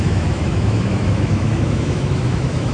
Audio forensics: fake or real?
fake